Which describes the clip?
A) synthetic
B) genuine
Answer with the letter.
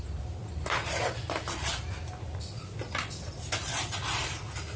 B